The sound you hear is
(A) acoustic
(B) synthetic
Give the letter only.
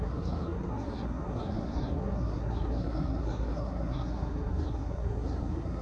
B